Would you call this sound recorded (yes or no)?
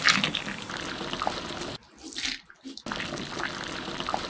yes